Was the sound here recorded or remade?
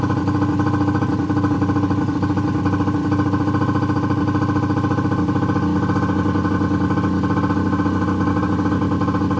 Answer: recorded